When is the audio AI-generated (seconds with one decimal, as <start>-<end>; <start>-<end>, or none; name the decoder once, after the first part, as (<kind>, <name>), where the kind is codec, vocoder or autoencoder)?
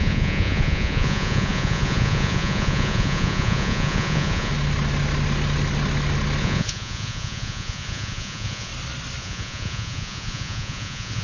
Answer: 0.0-4.5 (vocoder, Vocos); 6.4-8.7; 9.2-11.2